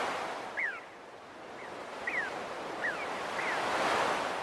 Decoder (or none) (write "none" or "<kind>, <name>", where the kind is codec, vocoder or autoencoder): none